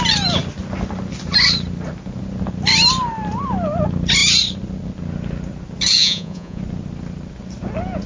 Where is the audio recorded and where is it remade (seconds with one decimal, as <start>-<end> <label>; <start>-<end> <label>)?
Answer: 0.0-6.0 recorded; 6.0-6.6 remade; 6.6-8.1 recorded

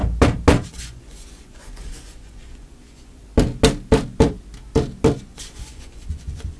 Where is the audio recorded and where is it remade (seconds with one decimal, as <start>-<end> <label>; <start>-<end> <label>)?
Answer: 0.0-0.7 recorded; 0.7-3.2 remade; 3.2-5.2 recorded; 5.2-6.6 remade

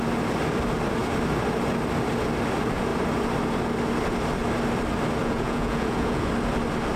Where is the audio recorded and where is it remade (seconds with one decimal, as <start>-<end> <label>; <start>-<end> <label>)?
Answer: 0.0-5.2 recorded; 5.2-6.3 remade; 6.3-7.0 recorded

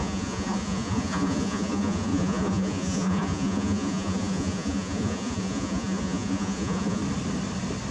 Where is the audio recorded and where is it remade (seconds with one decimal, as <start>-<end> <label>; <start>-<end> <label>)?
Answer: 0.0-7.0 remade; 7.0-7.9 recorded

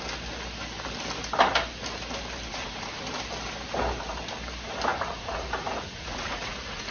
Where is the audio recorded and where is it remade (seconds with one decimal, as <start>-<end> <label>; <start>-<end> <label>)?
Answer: 0.0-2.5 recorded; 2.5-3.0 remade; 3.0-4.9 recorded; 4.9-6.9 remade

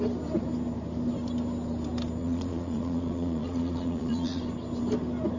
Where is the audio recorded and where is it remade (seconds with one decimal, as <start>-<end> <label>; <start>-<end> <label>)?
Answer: 0.0-2.2 recorded; 2.2-4.4 remade; 4.4-5.4 recorded

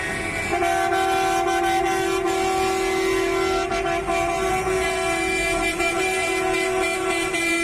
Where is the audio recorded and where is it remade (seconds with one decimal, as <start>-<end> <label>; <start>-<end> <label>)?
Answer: 0.0-0.5 remade; 0.5-4.5 recorded; 4.5-7.6 remade

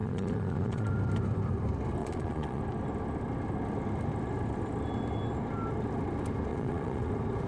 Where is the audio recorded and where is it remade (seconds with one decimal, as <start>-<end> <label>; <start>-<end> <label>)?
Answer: 0.0-0.9 remade; 0.9-2.0 recorded; 2.0-2.6 remade; 2.6-6.5 recorded; 6.5-7.1 remade; 7.1-7.5 recorded